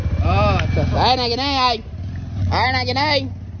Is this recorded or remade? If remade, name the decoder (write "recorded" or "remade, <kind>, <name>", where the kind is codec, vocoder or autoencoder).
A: recorded